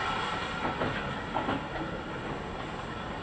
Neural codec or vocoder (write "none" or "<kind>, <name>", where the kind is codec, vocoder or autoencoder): none